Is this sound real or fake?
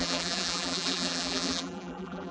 fake